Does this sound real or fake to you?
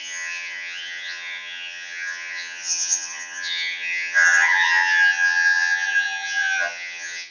fake